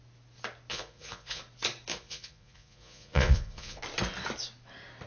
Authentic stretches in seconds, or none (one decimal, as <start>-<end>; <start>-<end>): 0.0-0.7; 1.4-1.9; 3.8-5.1